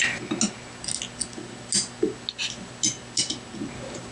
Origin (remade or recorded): recorded